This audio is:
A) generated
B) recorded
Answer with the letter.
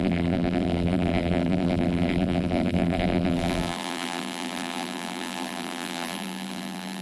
A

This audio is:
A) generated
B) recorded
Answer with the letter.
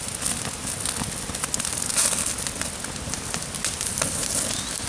B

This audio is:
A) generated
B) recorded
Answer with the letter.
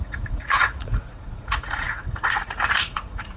A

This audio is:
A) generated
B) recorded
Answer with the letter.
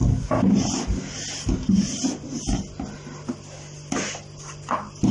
B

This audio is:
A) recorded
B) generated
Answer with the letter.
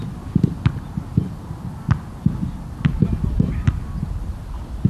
A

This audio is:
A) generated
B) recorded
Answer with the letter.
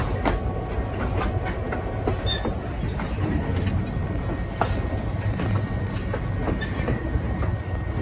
B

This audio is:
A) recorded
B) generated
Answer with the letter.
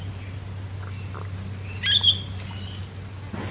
A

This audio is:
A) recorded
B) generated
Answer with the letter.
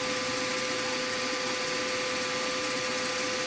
A